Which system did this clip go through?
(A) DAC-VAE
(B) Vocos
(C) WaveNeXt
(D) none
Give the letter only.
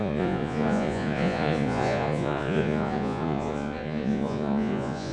B